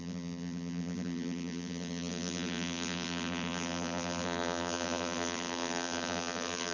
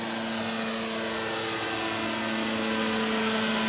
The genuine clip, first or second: second